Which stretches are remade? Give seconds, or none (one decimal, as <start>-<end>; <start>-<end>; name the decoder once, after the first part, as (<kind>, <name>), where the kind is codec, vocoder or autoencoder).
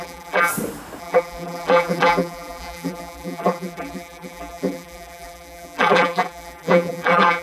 0.0-0.5 (vocoder, BigVGAN v2); 1.0-7.4